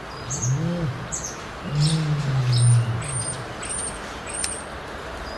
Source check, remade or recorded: recorded